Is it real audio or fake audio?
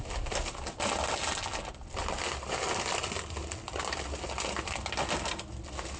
real